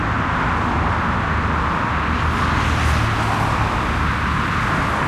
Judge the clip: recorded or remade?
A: recorded